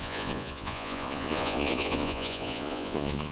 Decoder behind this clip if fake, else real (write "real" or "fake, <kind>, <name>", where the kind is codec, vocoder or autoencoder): fake, vocoder, Vocos